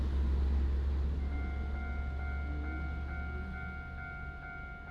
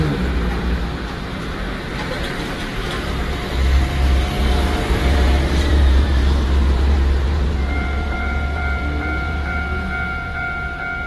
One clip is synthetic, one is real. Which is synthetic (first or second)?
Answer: second